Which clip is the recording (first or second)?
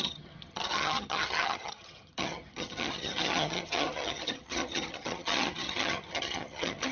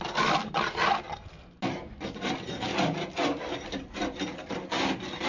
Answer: second